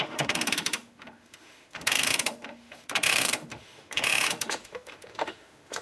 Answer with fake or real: fake